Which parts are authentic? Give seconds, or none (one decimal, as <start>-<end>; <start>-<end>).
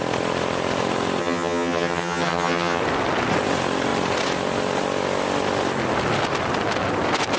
0.0-1.2; 2.8-7.4